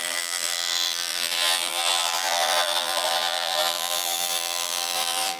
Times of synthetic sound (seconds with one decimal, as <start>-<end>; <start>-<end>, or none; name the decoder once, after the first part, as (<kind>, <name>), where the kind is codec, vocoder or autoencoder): 0.0-5.4 (vocoder, BigVGAN v2)